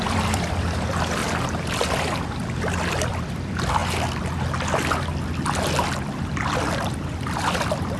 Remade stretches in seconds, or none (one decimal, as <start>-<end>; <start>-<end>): 0.0-1.2; 2.6-3.8; 6.7-8.0